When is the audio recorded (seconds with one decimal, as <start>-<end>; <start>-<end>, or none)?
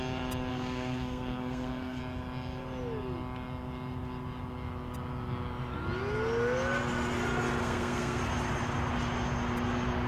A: 0.0-0.5; 2.0-7.6; 8.2-10.1